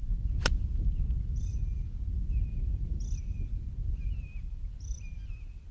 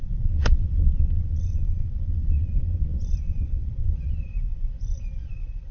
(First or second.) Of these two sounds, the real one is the first